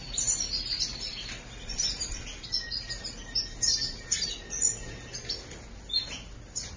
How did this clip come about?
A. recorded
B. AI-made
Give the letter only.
A